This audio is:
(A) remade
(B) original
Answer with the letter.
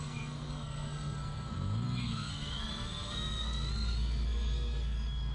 A